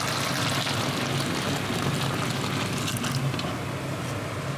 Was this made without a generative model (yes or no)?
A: yes